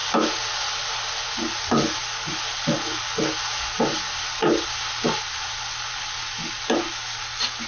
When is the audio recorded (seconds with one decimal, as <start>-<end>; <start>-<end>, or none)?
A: 0.0-7.7